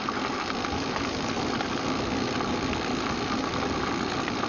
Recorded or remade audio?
recorded